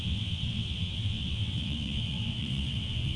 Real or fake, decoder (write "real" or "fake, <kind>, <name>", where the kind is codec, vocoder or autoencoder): fake, vocoder, WaveNeXt